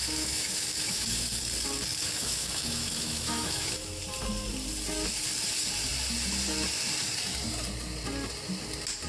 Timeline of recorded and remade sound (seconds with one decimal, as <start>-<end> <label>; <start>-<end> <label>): 0.0-1.4 remade; 1.4-1.9 recorded; 1.9-4.0 remade; 4.0-9.1 recorded